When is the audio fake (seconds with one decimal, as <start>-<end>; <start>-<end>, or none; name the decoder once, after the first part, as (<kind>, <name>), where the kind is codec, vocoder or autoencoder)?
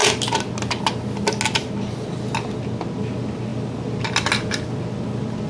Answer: none